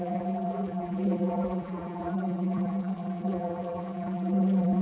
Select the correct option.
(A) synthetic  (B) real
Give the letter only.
A